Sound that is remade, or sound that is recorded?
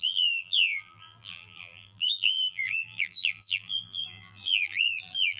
remade